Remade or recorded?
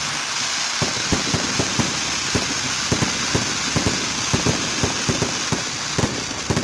recorded